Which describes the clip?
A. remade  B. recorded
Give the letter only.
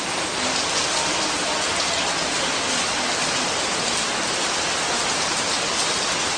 B